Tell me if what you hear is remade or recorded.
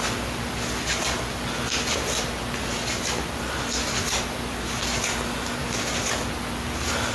recorded